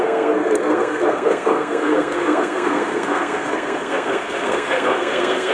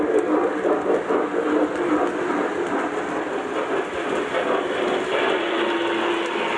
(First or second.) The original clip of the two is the second